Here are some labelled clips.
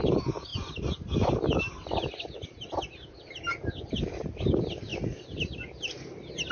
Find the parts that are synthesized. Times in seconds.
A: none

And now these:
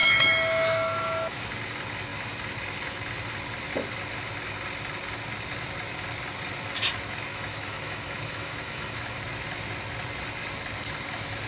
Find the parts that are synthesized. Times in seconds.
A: 0.0-1.4 (autoencoder, DAC-VAE); 7.3-9.2

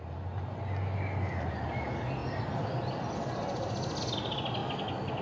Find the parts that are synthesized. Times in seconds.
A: none

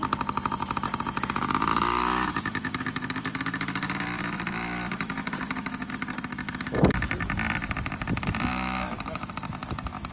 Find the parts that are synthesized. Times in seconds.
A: 1.7-5.9 (autoencoder, DAC-VAE); 8.5-9.3